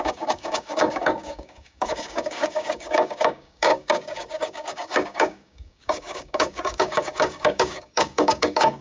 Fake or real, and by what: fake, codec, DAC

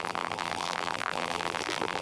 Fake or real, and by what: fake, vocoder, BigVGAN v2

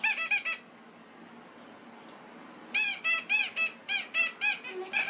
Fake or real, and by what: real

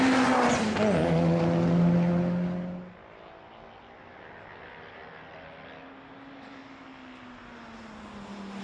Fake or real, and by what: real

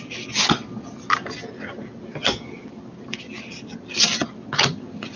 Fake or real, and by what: real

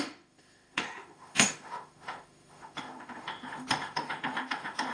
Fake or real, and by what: fake, autoencoder, DAC-VAE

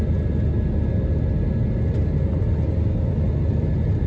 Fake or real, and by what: real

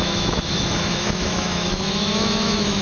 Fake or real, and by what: fake, autoencoder, DAC-VAE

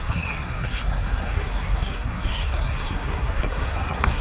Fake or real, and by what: fake, codec, SNAC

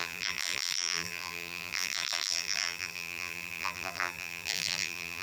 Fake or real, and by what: fake, vocoder, BigVGAN v2